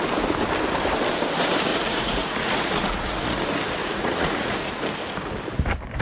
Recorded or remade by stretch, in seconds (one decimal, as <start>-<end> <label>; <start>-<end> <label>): 0.0-1.7 recorded; 1.7-3.2 remade; 3.2-3.8 recorded; 3.8-4.8 remade; 4.8-6.0 recorded